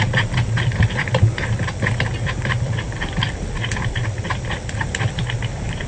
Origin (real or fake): real